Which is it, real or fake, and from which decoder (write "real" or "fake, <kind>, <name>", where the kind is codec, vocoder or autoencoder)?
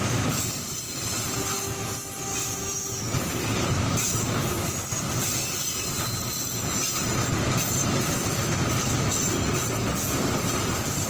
real